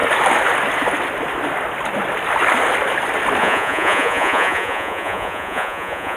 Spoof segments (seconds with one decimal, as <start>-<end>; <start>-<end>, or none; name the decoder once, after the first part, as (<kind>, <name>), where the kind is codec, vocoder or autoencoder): 3.4-6.2 (vocoder, Vocos)